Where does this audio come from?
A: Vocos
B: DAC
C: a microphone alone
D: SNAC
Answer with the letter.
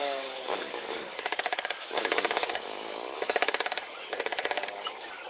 B